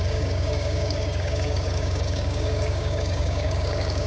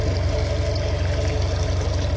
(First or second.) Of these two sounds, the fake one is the first